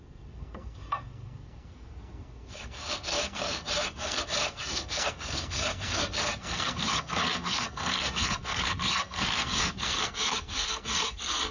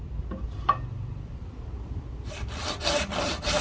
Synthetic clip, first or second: first